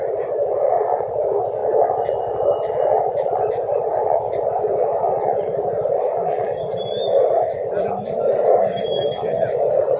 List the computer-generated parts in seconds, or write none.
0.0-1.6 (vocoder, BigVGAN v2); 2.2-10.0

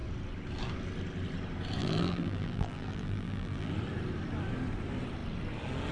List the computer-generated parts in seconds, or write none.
1.8-3.7 (vocoder, BigVGAN v2)

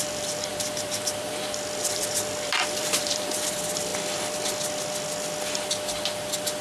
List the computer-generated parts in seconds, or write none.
0.0-3.9 (vocoder, BigVGAN v2)

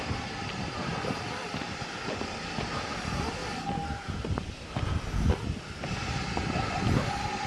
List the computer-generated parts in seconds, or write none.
none

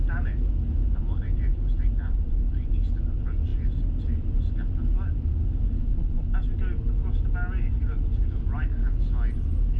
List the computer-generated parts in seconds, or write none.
0.8-2.3 (vocoder, BigVGAN v2)

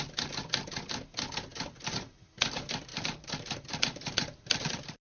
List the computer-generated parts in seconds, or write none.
2.9-5.1 (vocoder, BigVGAN v2)

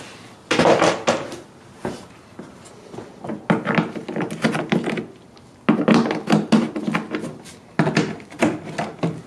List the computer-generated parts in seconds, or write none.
none